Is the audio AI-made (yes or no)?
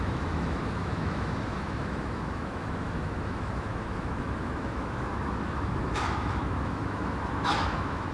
yes